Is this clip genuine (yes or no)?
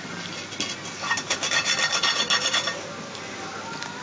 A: yes